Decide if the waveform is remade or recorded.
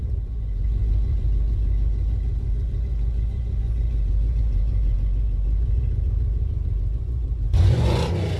remade